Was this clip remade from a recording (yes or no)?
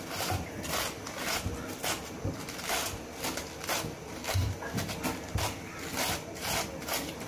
no